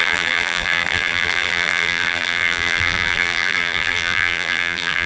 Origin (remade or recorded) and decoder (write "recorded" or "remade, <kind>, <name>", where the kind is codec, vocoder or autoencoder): remade, vocoder, BigVGAN v2